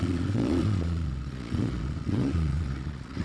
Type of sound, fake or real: fake